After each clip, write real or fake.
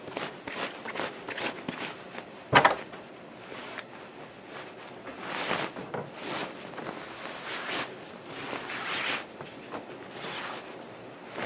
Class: real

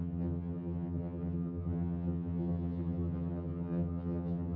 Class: fake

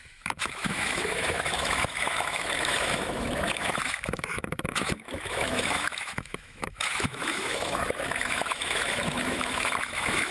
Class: fake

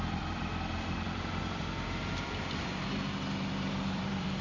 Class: fake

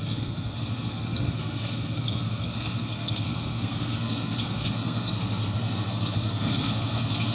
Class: fake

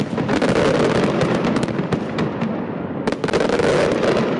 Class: real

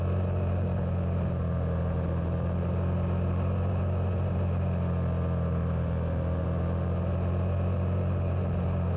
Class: real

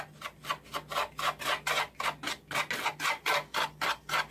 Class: real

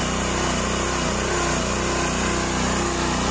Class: real